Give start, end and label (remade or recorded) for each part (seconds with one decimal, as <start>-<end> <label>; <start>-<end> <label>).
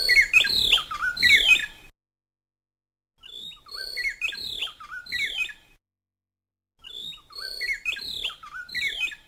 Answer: 0.0-9.3 recorded